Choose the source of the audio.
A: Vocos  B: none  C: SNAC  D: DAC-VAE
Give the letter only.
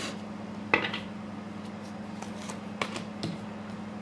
B